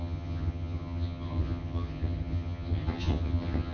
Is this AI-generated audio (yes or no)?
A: yes